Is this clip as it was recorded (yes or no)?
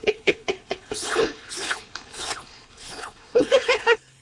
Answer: no